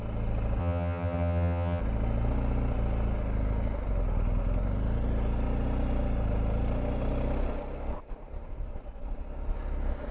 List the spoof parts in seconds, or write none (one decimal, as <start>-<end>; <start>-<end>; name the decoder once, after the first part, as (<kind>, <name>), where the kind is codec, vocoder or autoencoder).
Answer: 0.6-1.8 (vocoder, HiFi-GAN)